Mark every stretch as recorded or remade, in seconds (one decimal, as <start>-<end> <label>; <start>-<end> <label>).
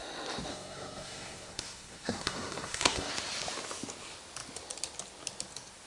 0.0-0.5 recorded; 0.5-3.1 remade; 3.1-5.9 recorded